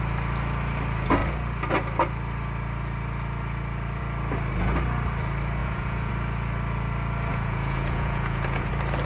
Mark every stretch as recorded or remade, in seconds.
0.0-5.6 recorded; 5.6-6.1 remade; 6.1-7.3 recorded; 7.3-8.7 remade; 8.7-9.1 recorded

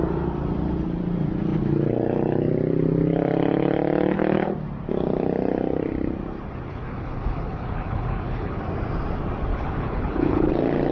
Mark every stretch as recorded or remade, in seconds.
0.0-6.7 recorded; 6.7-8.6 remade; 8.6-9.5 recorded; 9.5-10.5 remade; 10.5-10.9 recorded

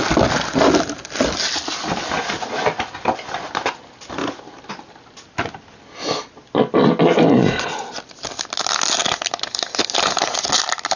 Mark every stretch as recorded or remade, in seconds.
0.0-11.0 recorded

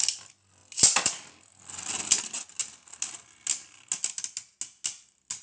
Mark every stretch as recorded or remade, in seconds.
0.0-5.4 recorded